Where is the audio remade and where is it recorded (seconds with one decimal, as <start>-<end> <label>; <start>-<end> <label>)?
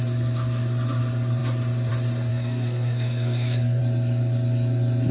0.0-2.3 recorded; 2.3-3.8 remade; 3.8-5.1 recorded